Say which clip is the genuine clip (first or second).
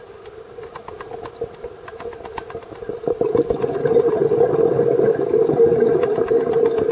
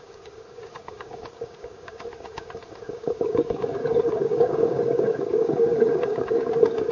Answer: first